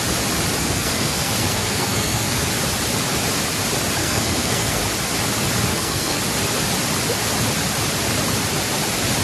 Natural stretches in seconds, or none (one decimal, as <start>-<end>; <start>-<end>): 0.0-0.6; 2.5-4.0; 4.8-5.7; 6.2-9.2